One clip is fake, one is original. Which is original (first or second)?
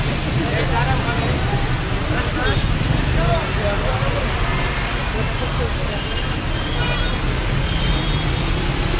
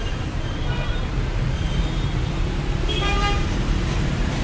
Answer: first